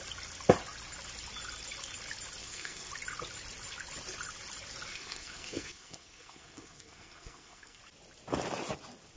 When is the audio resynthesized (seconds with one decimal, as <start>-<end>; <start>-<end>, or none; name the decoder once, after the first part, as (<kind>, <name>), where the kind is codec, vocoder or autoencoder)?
2.4-2.9 (codec, SNAC); 4.9-7.8